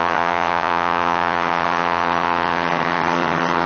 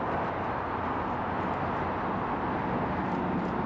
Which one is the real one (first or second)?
second